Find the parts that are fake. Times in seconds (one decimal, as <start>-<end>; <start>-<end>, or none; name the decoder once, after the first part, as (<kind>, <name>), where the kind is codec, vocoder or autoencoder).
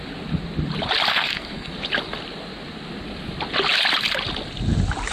1.1-1.7 (codec, SNAC)